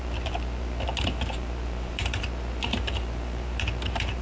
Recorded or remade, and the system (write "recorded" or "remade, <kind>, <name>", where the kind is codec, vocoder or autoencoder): remade, vocoder, BigVGAN v2